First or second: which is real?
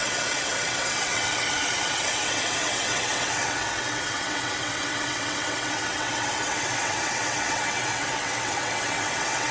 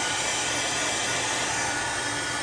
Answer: second